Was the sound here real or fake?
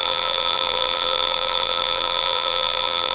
fake